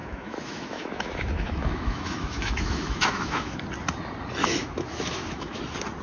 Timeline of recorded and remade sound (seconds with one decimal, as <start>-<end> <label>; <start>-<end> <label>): 0.0-3.6 remade; 3.6-4.4 recorded; 4.4-5.6 remade; 5.6-6.0 recorded